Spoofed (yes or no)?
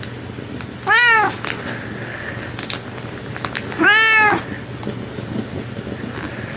no